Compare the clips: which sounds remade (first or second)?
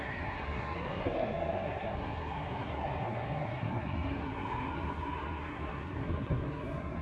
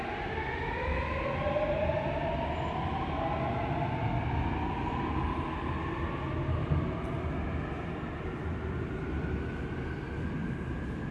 first